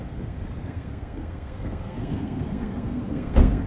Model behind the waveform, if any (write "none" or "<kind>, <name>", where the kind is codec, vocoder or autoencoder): codec, SNAC